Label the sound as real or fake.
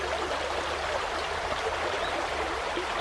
real